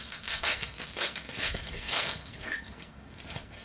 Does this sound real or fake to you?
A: fake